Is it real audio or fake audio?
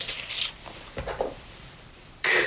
fake